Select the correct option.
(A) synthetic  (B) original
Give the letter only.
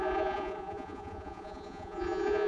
A